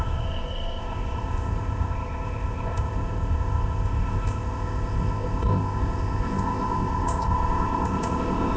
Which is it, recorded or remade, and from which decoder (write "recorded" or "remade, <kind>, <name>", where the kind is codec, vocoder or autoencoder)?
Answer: remade, codec, ZipCodec